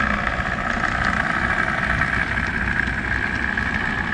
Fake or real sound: real